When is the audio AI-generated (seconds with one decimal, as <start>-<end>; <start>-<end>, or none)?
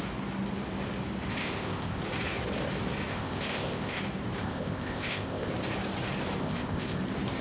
1.4-2.0; 3.1-4.0; 4.4-5.5; 6.4-7.0